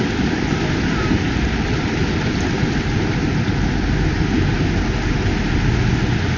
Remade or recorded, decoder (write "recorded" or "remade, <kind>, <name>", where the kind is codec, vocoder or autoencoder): recorded